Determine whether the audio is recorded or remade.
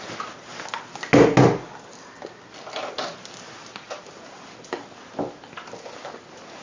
recorded